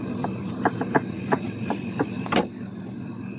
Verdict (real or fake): real